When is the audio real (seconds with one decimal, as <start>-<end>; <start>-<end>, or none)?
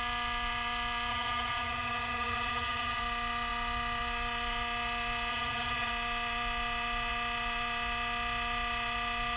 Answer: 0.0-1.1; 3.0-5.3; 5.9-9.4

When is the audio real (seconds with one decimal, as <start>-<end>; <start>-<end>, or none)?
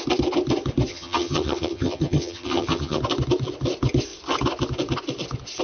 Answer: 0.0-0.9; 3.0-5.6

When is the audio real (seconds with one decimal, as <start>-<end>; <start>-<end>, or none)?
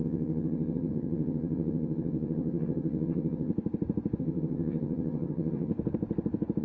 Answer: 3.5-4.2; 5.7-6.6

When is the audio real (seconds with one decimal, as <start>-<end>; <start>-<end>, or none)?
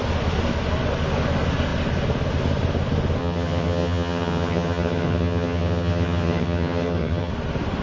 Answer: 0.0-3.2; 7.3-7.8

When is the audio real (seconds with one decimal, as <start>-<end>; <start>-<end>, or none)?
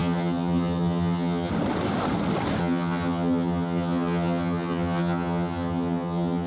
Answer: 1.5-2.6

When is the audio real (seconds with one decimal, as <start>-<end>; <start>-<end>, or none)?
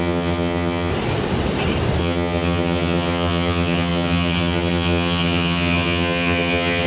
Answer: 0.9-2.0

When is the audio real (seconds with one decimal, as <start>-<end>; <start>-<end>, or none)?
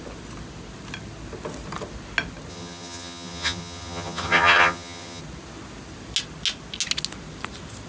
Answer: 0.0-2.5; 5.2-7.9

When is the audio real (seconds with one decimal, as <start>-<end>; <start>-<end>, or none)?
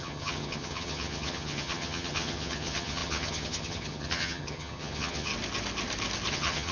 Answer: 5.3-6.3